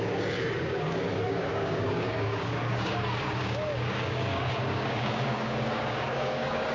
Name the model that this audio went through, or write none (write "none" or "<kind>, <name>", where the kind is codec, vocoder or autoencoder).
codec, DAC